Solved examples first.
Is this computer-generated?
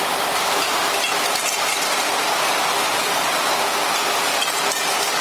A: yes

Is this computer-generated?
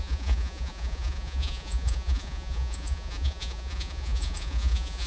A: yes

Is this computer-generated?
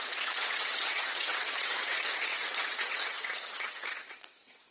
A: yes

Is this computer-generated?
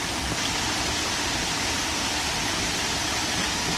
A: no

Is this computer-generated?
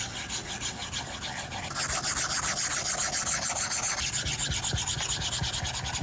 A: no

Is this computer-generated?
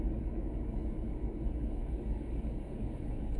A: yes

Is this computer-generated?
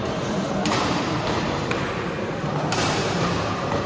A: yes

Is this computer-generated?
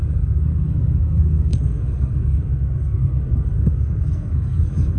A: yes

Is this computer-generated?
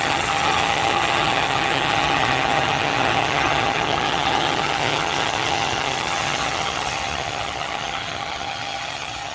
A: yes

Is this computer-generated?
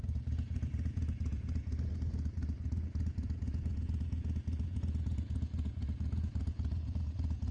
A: yes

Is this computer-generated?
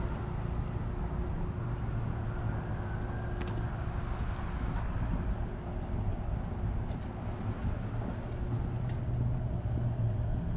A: no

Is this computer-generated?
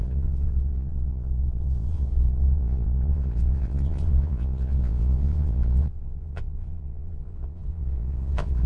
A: yes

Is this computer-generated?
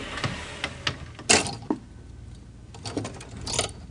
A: no